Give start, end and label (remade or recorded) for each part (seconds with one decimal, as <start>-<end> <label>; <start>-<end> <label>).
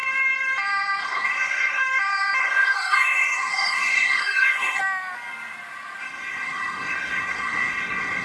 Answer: 0.0-1.0 recorded; 1.0-1.8 remade; 1.8-2.4 recorded; 2.4-4.8 remade; 4.8-6.0 recorded; 6.0-8.2 remade